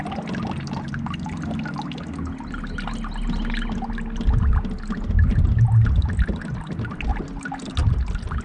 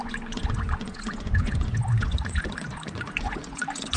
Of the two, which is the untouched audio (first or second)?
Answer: first